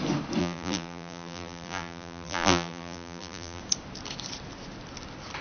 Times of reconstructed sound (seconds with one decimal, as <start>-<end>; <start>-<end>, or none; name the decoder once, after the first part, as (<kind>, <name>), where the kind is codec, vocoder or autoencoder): 0.4-3.6 (vocoder, BigVGAN v2)